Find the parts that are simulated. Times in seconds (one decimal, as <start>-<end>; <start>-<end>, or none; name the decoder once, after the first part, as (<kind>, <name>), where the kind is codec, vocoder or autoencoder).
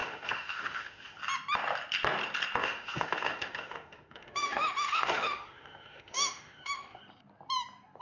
0.0-1.2 (autoencoder, DAC-VAE); 2.6-7.0